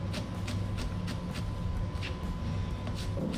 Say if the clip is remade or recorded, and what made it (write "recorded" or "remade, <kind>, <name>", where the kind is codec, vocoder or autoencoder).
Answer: recorded